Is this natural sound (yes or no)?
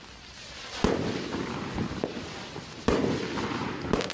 yes